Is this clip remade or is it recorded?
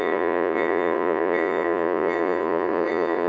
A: remade